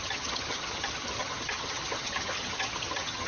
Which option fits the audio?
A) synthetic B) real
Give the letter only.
A